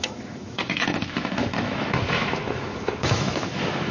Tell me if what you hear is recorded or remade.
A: remade